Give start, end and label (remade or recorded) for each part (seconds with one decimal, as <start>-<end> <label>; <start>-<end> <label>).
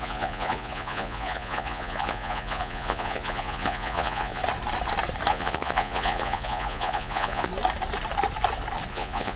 0.0-4.4 remade; 4.4-5.3 recorded; 5.3-7.5 remade; 7.5-8.9 recorded; 8.9-9.4 remade